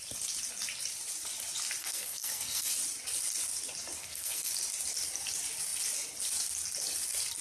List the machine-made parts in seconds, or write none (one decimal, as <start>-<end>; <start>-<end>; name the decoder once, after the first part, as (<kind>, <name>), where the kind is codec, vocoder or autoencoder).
1.8-2.7 (codec, SNAC); 4.0-4.5